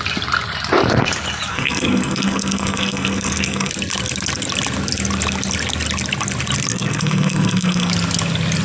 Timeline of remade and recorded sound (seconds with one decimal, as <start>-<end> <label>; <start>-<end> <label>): 0.0-1.5 recorded; 1.5-3.7 remade; 3.7-6.7 recorded; 6.7-7.9 remade; 7.9-8.6 recorded